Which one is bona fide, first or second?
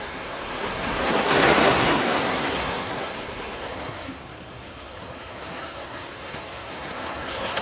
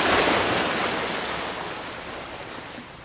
second